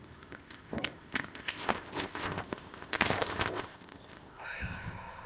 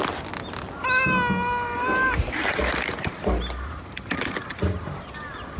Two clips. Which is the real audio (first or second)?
second